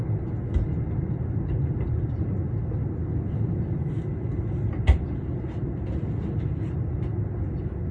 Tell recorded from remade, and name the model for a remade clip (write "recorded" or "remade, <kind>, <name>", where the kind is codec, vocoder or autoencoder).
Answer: recorded